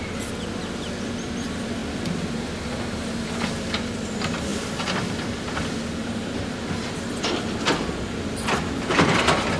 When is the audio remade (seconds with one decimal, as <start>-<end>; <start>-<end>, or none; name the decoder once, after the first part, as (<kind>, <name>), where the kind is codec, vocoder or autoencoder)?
0.0-9.6 (vocoder, BigVGAN v2)